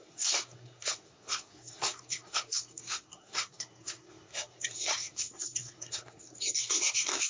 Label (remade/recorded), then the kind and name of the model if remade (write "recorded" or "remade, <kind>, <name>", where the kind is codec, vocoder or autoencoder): remade, codec, SNAC